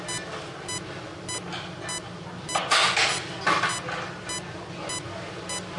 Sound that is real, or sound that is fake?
real